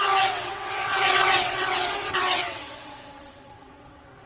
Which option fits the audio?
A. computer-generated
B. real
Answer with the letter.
A